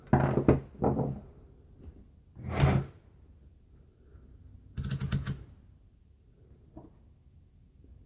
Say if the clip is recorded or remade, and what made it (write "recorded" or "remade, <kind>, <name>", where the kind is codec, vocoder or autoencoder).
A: recorded